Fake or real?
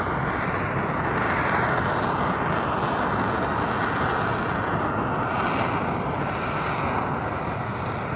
real